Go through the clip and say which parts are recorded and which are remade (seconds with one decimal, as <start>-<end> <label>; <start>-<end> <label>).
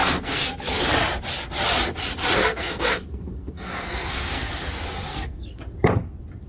0.0-0.9 remade; 0.9-2.4 recorded; 2.4-4.5 remade; 4.5-5.1 recorded; 5.1-5.6 remade; 5.6-6.5 recorded